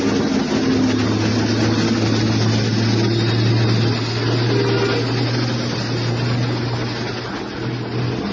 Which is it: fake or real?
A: real